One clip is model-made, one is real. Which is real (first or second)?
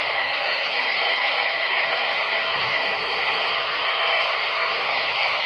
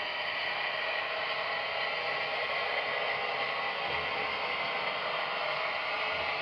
second